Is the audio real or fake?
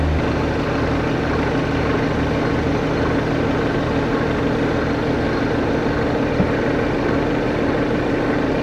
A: real